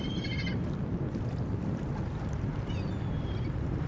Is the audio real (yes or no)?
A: yes